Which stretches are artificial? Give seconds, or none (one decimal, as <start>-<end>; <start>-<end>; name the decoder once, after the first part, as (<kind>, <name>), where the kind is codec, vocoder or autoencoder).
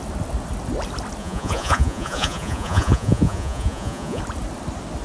1.2-4.2 (vocoder, Vocos)